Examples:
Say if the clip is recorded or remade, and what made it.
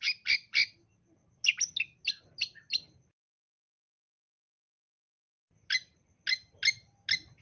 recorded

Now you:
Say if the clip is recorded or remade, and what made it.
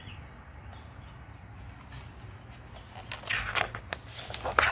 recorded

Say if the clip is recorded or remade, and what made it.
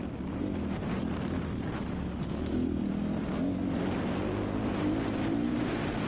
recorded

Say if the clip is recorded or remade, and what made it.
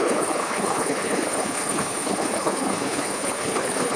remade, codec, HILCodec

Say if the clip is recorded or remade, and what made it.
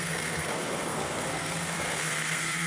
remade, codec, SNAC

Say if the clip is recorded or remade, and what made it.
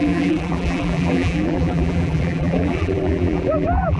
remade, vocoder, BigVGAN v2